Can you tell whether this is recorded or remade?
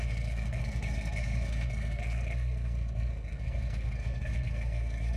remade